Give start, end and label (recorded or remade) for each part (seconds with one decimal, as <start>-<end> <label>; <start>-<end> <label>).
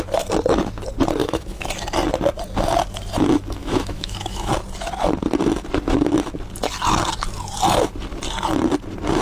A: 0.0-1.2 recorded; 1.2-1.7 remade; 1.7-3.6 recorded; 3.6-4.5 remade; 4.5-9.2 recorded